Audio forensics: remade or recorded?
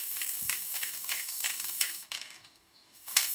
remade